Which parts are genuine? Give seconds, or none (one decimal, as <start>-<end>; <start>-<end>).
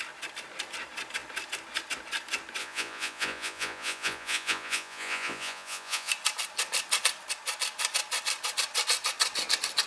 0.0-2.6; 6.1-9.9